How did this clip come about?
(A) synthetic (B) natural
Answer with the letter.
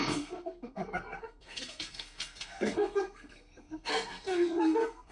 A